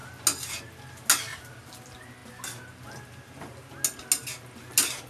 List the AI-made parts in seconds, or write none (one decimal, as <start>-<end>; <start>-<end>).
1.3-1.8